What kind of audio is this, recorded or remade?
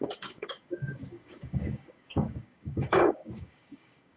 remade